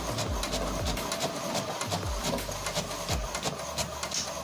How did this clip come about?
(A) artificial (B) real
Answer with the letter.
B